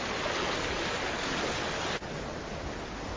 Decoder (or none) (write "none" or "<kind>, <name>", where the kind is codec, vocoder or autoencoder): none